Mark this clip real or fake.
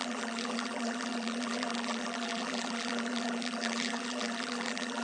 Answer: fake